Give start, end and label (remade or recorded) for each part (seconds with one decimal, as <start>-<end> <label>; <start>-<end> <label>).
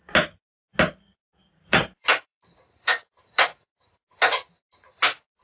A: 0.0-1.4 recorded; 1.4-3.4 remade; 3.4-5.4 recorded